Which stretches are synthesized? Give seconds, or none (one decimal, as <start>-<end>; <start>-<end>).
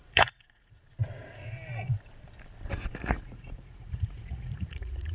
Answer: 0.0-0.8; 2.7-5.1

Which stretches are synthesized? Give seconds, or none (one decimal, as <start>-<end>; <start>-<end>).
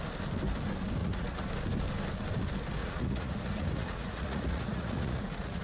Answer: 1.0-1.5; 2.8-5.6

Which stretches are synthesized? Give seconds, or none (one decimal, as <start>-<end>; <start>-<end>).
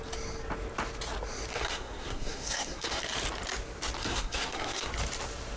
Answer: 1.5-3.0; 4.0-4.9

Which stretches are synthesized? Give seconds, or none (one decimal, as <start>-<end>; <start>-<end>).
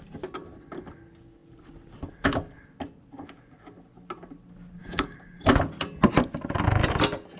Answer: 4.8-5.5